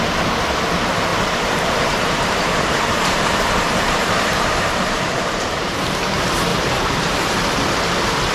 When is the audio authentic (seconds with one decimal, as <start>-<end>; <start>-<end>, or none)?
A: 0.0-1.1; 5.6-6.5; 7.8-8.3